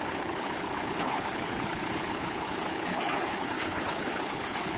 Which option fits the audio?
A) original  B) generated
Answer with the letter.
B